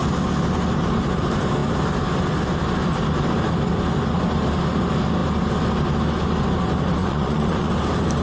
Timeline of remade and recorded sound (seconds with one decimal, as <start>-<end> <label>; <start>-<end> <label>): 0.0-7.0 recorded; 7.0-7.7 remade; 7.7-8.2 recorded